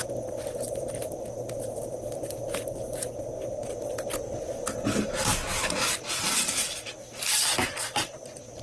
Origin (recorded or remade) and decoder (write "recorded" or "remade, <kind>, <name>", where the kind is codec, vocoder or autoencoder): remade, vocoder, BigVGAN v2